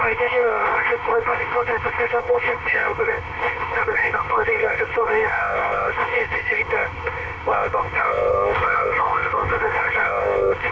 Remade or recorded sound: remade